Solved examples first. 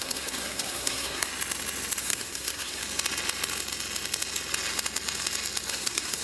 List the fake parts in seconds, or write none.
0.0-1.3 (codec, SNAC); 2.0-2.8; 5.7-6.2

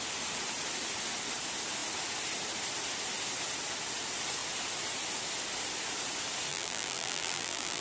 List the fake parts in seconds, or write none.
6.5-7.8 (vocoder, BigVGAN v2)

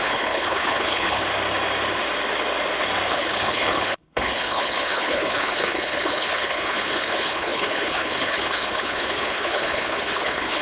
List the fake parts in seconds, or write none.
0.0-1.2 (codec, HILCodec); 3.1-10.6

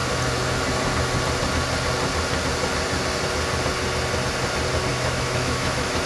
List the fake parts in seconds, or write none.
4.9-6.1 (autoencoder, DAC-VAE)

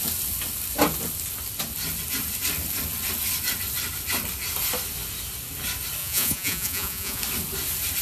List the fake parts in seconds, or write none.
6.0-7.2 (vocoder, Vocos)

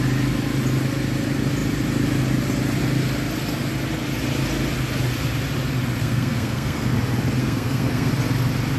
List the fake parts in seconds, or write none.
6.0-6.9 (codec, SNAC); 7.4-8.1